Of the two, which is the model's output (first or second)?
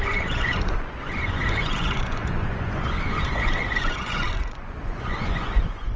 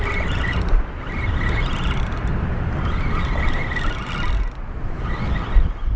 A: first